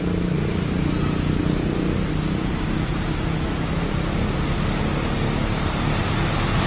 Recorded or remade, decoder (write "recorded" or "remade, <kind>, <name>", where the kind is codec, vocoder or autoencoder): recorded